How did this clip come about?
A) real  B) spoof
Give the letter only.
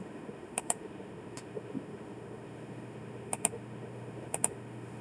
B